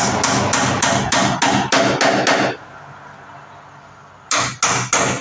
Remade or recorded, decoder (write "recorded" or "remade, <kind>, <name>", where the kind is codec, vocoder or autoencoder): recorded